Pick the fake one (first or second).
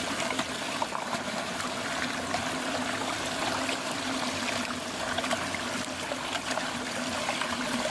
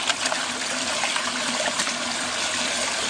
first